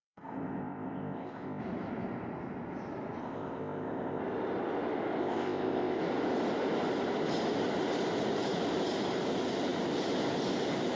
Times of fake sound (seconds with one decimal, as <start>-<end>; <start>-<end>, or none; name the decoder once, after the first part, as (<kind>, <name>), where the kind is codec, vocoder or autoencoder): 0.0-1.6 (codec, ZipCodec); 3.2-4.2; 5.2-6.0